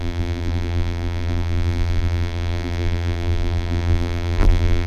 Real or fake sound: fake